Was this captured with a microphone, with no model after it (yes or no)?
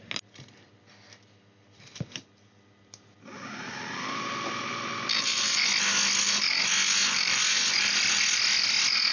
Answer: yes